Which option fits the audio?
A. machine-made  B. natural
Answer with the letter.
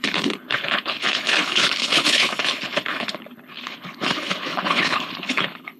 A